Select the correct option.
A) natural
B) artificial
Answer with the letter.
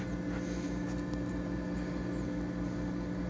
A